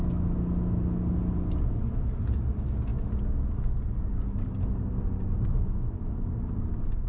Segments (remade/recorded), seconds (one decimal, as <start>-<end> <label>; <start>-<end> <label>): 0.0-7.1 recorded